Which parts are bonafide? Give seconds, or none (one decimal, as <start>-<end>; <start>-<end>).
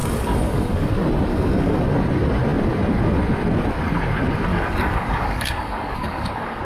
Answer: 0.9-1.3; 1.8-4.5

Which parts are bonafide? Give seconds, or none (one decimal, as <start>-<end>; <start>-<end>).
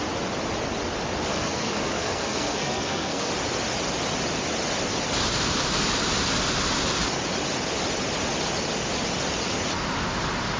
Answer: 0.0-1.3; 3.3-10.6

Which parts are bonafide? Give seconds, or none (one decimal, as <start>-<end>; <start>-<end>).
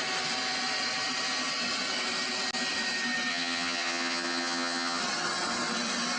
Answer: 0.0-3.3; 5.0-6.2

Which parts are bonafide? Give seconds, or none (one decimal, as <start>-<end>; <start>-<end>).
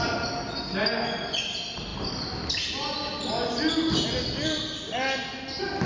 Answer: 0.0-5.9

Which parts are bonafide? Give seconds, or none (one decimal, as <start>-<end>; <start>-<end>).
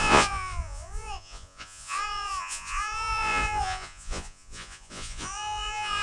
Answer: none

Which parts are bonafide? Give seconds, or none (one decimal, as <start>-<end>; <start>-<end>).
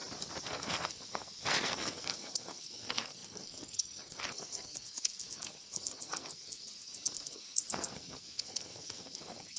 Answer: 0.0-0.5